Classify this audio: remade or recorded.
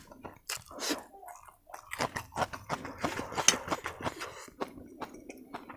recorded